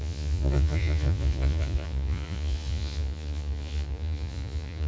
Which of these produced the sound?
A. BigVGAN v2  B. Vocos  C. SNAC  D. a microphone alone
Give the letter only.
B